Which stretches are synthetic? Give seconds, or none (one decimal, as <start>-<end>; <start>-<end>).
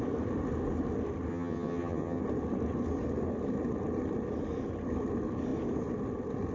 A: 1.3-2.2